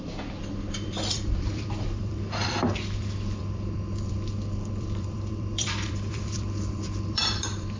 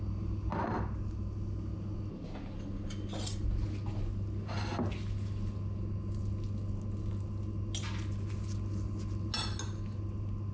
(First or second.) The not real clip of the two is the first